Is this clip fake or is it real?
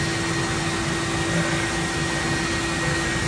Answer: real